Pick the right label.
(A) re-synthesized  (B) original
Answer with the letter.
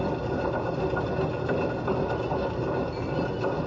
B